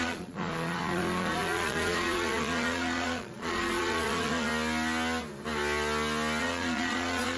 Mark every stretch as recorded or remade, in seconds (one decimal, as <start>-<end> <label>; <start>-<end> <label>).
0.0-4.5 remade; 4.5-6.4 recorded; 6.4-7.4 remade